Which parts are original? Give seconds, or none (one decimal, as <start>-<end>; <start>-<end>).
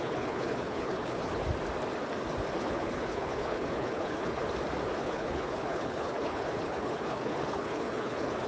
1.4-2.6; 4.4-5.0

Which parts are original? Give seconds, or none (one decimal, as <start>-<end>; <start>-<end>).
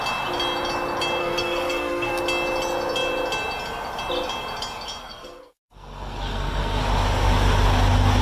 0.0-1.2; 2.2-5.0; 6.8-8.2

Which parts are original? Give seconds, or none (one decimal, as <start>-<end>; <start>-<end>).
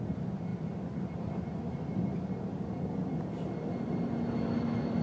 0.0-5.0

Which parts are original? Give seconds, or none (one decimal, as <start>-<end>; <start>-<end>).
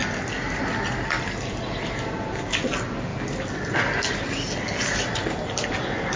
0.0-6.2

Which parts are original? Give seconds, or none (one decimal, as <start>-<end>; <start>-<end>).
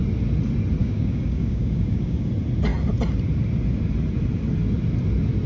0.0-0.8; 2.3-5.5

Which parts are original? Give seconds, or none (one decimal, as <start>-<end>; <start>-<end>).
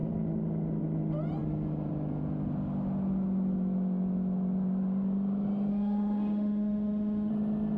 0.0-5.7; 7.3-7.8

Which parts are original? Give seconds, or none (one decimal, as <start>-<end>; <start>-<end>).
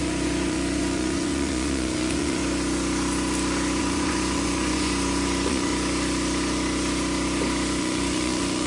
2.4-3.8; 5.7-7.8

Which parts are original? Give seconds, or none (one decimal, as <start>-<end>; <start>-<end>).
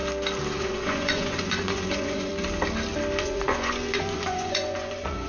0.0-0.6; 2.3-3.2